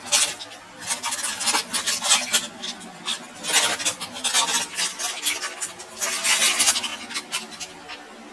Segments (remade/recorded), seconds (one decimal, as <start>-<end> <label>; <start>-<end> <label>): 0.0-8.3 recorded